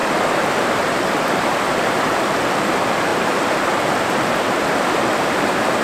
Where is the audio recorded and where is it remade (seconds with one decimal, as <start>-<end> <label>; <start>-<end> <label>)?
0.0-5.8 remade